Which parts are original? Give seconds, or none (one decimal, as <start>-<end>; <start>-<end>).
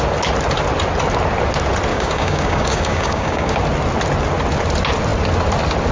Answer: 0.0-1.9; 3.6-5.9